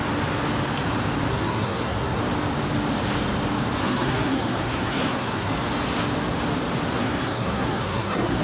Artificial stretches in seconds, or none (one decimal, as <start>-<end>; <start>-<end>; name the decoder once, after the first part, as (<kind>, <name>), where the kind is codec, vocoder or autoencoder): 1.3-2.2 (codec, SNAC); 3.8-5.5; 6.9-8.4